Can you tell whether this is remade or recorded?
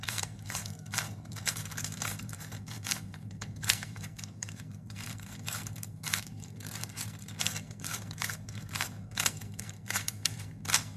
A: remade